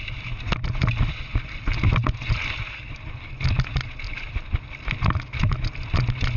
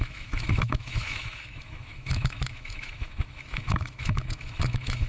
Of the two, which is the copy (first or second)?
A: second